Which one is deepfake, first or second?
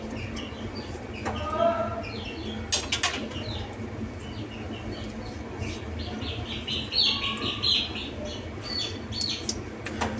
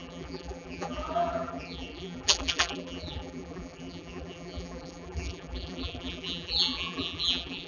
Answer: second